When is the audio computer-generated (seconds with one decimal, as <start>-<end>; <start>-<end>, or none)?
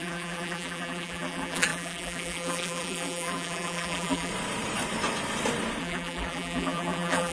0.0-4.3; 5.8-7.3